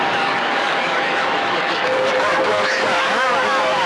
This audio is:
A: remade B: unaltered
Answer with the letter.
A